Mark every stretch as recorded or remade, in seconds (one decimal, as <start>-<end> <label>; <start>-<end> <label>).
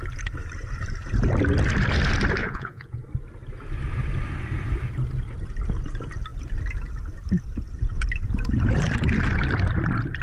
0.0-2.4 recorded; 2.4-3.0 remade; 3.0-10.2 recorded